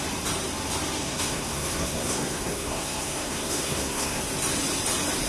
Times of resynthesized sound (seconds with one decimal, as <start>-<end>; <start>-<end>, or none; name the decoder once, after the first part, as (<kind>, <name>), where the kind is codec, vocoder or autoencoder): 1.0-4.2 (codec, SNAC)